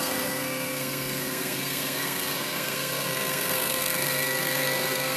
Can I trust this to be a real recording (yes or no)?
no